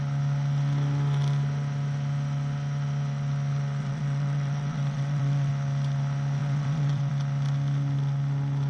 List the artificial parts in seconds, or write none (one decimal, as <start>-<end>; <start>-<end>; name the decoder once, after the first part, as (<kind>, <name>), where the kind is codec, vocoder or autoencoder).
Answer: 3.8-5.5 (vocoder, Vocos); 6.4-7.1